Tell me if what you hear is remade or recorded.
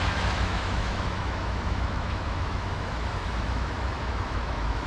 remade